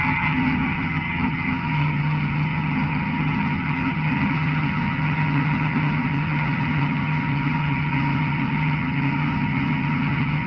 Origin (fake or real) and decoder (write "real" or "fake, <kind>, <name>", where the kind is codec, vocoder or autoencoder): fake, vocoder, HiFi-GAN